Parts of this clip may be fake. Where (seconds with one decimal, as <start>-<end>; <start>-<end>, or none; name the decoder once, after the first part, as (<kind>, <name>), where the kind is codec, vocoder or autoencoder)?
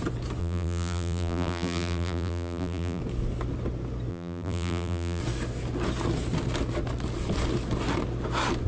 0.4-3.0 (vocoder, BigVGAN v2); 4.1-5.2